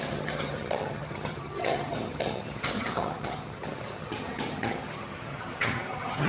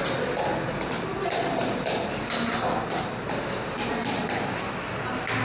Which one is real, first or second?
second